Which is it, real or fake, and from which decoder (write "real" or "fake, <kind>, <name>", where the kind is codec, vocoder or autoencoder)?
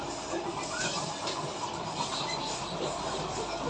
real